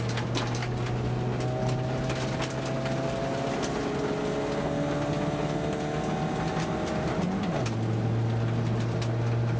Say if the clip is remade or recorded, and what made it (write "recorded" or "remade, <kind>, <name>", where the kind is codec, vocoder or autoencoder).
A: recorded